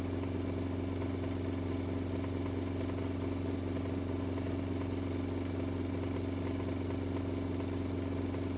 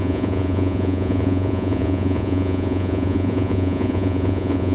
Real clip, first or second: first